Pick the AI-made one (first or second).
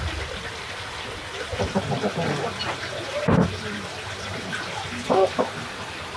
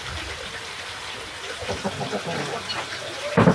first